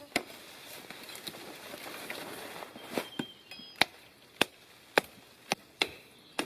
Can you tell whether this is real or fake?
real